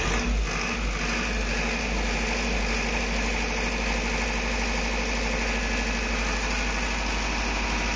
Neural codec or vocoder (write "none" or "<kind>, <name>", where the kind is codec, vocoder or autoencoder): none